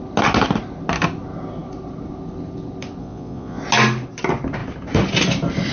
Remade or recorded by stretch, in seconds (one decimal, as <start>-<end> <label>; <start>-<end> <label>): 0.0-3.0 recorded; 3.0-3.6 remade; 3.6-5.7 recorded